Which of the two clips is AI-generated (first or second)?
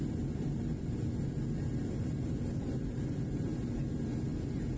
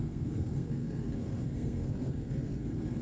second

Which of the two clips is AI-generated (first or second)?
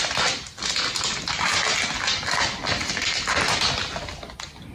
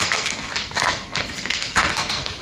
second